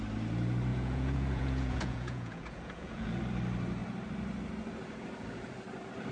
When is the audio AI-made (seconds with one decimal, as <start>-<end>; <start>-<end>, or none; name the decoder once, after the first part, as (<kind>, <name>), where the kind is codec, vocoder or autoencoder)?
0.7-3.2 (vocoder, Vocos)